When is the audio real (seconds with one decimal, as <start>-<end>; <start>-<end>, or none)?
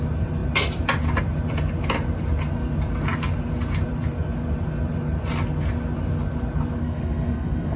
0.0-6.8